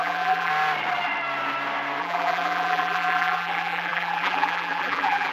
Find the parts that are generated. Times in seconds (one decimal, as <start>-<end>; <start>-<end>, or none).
0.0-0.5; 2.0-5.3

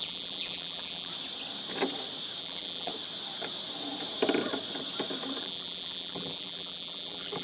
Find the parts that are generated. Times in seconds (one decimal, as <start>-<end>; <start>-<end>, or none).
0.0-1.1; 2.4-2.9; 5.4-7.4

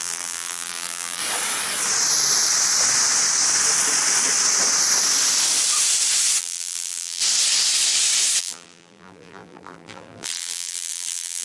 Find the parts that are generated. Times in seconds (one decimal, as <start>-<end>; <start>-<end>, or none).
0.0-1.2; 6.4-7.2; 8.4-11.4

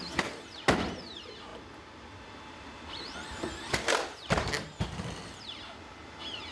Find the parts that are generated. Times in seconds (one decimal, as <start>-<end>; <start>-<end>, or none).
none

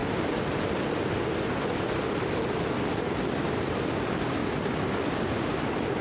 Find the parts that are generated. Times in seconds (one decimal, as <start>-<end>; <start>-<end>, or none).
4.4-5.6

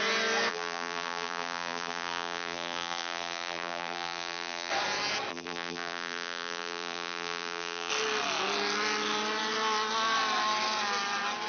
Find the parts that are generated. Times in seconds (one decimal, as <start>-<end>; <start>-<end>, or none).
0.5-4.7; 5.3-7.9

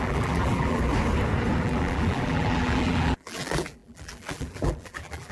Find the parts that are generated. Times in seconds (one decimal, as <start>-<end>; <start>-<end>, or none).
0.0-0.9; 1.6-5.3

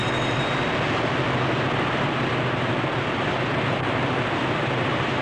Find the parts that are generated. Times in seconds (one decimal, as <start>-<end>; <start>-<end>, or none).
3.1-5.2